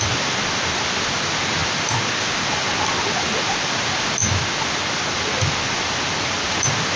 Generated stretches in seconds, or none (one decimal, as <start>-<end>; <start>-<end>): none